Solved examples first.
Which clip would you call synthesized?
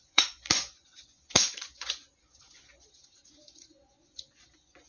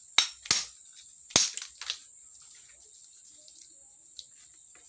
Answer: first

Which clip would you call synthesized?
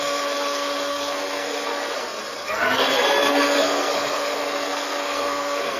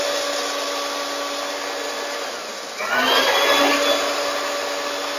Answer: first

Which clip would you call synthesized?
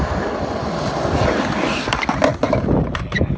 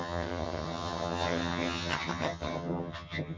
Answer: second